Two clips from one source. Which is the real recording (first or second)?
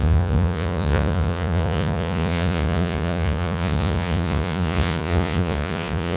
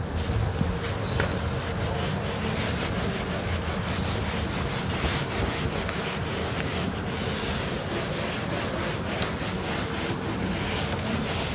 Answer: second